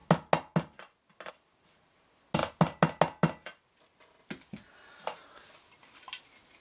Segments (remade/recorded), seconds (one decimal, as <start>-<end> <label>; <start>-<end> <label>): 0.0-6.6 recorded